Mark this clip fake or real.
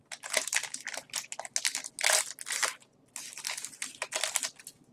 real